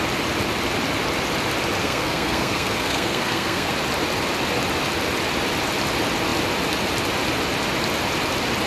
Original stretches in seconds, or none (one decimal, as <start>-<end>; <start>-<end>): 0.0-1.8; 3.7-8.7